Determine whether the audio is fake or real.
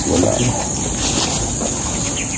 real